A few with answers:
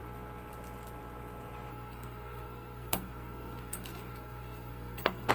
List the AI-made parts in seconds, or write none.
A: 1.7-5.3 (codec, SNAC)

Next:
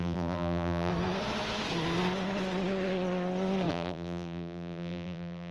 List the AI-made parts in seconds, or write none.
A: 0.0-0.9 (vocoder, BigVGAN v2); 3.7-5.5

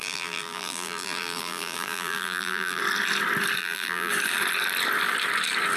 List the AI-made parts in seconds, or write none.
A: 0.0-2.8 (vocoder, BigVGAN v2); 3.6-4.1

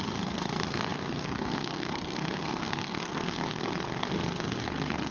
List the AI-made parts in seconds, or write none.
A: 0.0-5.1 (codec, SNAC)

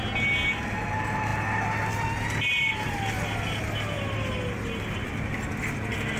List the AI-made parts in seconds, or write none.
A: none